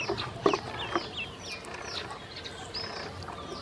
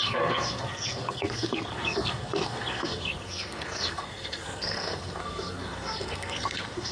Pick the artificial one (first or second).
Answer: second